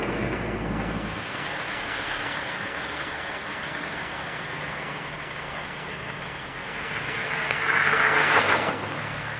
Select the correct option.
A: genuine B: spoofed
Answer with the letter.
B